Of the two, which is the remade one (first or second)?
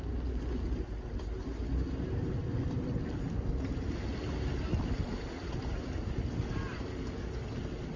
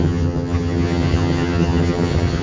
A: second